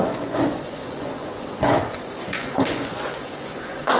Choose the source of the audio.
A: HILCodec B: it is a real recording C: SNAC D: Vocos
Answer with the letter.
D